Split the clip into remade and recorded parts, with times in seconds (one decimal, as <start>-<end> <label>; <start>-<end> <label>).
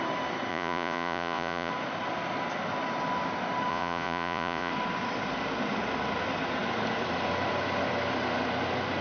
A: 0.0-0.5 recorded; 0.5-1.7 remade; 1.7-3.7 recorded; 3.7-4.7 remade; 4.7-9.0 recorded